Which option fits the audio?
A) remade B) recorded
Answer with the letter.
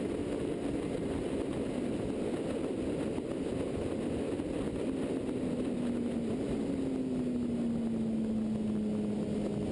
B